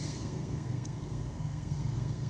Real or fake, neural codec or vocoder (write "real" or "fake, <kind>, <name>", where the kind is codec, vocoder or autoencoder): fake, codec, SNAC